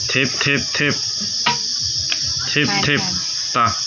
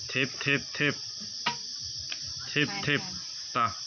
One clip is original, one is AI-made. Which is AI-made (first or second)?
second